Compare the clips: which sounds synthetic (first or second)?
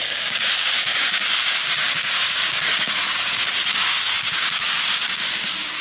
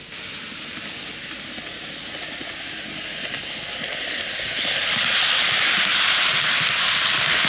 first